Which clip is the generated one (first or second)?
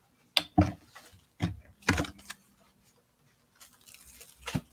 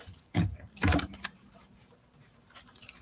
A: second